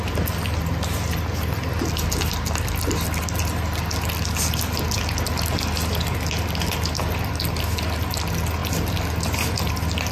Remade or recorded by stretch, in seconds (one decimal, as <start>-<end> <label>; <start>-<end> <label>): 0.0-10.1 recorded

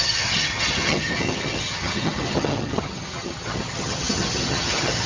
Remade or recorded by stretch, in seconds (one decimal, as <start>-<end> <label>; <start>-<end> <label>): 0.0-5.1 remade